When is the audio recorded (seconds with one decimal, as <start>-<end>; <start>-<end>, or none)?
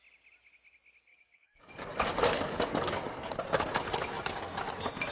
0.0-1.1; 3.3-5.1